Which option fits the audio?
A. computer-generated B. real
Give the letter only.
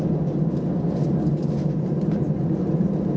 B